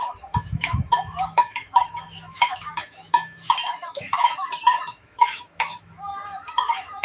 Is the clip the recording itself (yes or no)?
no